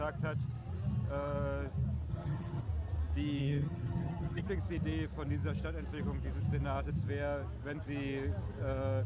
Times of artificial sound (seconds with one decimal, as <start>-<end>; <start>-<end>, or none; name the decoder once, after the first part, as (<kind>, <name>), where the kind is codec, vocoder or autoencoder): 2.1-2.6 (vocoder, HiFi-GAN); 3.4-4.4